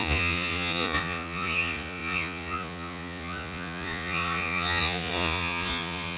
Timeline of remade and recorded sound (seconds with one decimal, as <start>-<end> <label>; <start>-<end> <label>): 0.0-6.2 remade

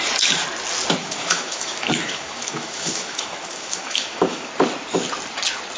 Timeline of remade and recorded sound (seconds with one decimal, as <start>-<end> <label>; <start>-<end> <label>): 0.0-1.0 recorded; 1.0-4.5 remade; 4.5-5.8 recorded

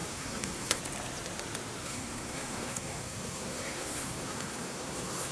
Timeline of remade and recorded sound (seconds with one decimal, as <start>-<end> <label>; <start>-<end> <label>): 0.0-0.8 remade; 0.8-1.8 recorded; 1.8-5.3 remade

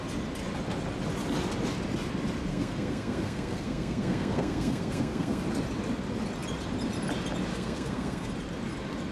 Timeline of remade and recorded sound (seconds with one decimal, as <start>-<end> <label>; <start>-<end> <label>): 0.0-2.5 recorded; 2.5-5.4 remade; 5.4-7.5 recorded; 7.5-8.3 remade; 8.3-9.1 recorded

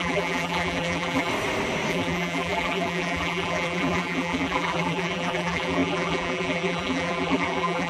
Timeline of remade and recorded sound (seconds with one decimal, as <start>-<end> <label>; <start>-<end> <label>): 0.0-1.3 remade; 1.3-1.9 recorded; 1.9-7.9 remade